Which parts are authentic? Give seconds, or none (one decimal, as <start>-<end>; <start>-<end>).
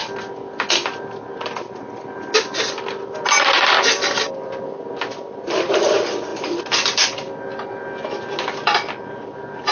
0.0-9.7